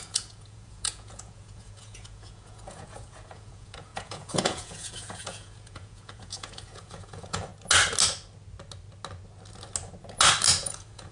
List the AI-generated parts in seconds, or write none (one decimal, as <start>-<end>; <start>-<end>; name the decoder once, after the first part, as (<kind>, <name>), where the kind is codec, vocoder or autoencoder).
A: 0.0-7.5 (vocoder, Vocos); 10.6-11.1